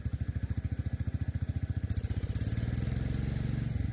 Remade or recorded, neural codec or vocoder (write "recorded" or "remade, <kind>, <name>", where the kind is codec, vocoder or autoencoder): recorded